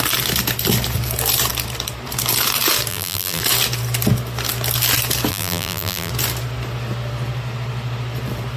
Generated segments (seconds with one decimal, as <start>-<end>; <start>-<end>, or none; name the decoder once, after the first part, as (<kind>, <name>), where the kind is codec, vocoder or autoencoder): 2.9-3.4 (vocoder, BigVGAN v2); 5.3-6.1